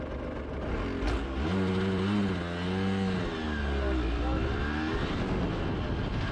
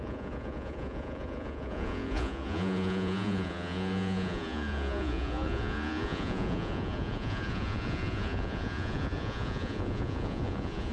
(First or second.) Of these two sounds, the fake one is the second